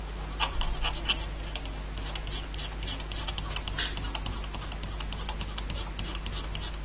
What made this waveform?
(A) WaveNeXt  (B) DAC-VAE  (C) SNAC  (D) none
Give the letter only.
D